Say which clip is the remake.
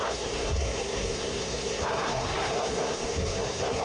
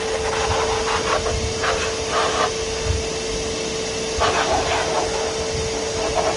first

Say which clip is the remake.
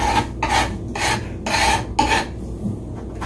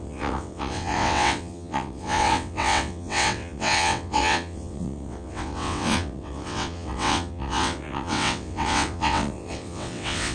second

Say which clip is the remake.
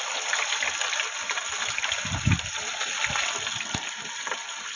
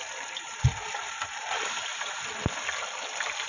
second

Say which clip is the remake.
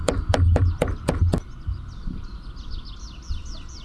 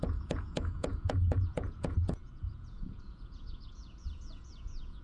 second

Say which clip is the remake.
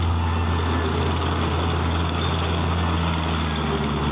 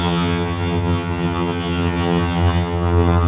second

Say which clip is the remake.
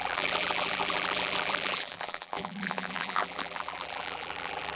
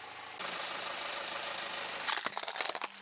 first